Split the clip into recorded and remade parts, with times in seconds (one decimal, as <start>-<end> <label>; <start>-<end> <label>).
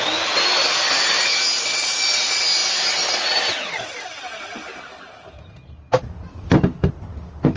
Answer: 0.0-7.6 recorded